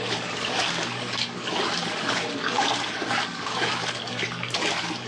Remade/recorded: remade